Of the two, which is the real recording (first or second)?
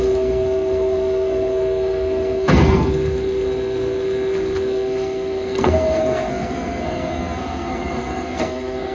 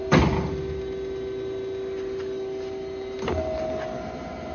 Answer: second